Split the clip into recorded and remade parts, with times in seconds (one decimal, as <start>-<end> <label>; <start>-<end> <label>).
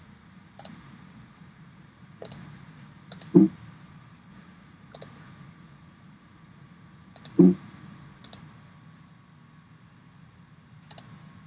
0.0-3.4 remade; 3.4-4.3 recorded; 4.3-8.4 remade; 8.4-11.5 recorded